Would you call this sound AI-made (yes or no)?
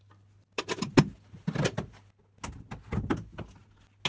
no